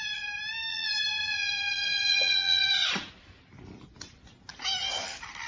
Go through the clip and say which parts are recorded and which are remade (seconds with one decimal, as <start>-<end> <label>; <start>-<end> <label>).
0.0-0.7 recorded; 0.7-3.1 remade; 3.1-5.5 recorded